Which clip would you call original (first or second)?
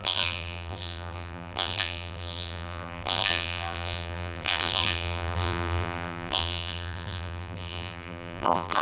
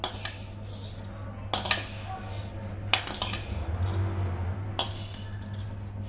second